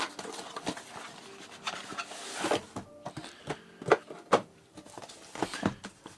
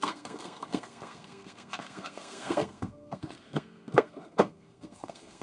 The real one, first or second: first